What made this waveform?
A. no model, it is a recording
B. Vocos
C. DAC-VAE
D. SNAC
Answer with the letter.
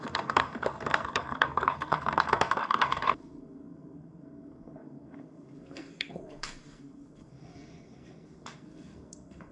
D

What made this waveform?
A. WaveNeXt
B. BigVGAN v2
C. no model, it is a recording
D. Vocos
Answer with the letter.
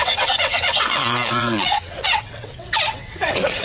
A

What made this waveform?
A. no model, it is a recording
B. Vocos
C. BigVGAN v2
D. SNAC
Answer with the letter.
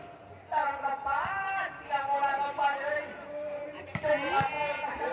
C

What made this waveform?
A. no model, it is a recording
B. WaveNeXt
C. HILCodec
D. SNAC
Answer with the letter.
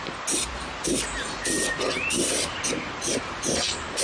A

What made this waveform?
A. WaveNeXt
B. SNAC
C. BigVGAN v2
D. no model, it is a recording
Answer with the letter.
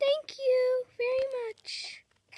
D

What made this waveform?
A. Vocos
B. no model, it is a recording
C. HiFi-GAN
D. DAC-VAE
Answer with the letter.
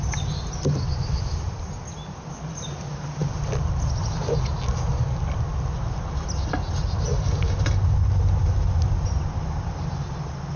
B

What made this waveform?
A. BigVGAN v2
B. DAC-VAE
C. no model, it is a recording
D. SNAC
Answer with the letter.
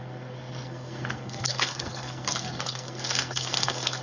D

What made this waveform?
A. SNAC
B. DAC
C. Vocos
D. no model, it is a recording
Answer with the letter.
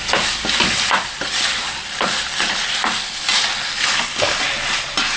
D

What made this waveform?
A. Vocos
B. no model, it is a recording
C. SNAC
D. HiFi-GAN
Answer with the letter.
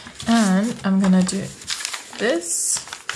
B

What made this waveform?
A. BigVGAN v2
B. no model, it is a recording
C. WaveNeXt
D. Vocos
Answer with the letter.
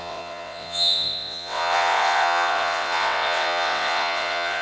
C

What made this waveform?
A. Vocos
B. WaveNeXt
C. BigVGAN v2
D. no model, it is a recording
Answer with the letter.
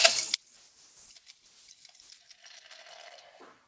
D